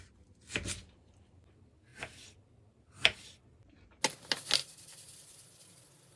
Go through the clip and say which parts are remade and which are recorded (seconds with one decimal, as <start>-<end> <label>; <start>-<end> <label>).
0.0-1.9 recorded; 1.9-3.3 remade; 3.3-4.6 recorded; 4.6-6.2 remade